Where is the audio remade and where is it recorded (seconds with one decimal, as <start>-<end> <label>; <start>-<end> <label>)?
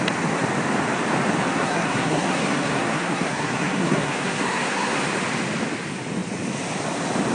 0.0-1.5 recorded; 1.5-5.0 remade; 5.0-7.3 recorded